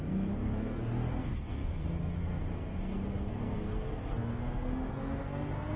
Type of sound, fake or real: fake